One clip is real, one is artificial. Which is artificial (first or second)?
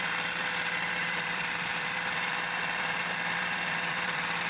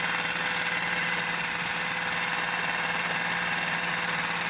first